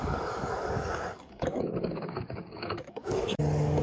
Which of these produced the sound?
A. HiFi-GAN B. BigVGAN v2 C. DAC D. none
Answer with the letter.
C